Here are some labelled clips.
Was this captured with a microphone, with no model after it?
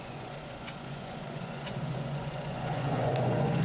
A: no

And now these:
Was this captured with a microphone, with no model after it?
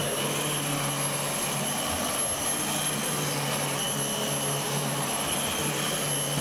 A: yes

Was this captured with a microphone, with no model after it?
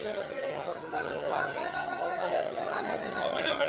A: no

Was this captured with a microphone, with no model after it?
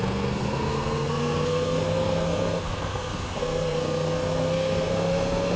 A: no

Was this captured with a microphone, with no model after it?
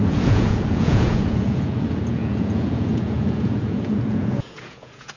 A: no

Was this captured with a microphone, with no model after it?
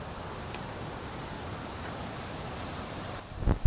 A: no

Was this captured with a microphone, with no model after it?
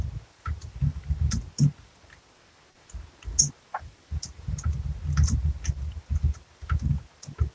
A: yes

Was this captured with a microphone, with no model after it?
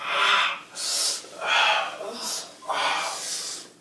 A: yes